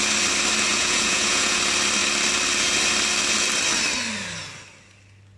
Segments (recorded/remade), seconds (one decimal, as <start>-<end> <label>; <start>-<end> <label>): 0.0-0.7 recorded; 0.7-1.6 remade; 1.6-5.4 recorded